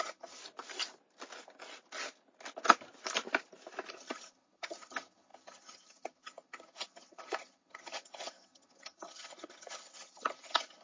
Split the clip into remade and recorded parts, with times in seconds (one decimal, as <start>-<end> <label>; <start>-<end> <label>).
0.0-0.4 remade; 0.4-3.9 recorded; 3.9-10.8 remade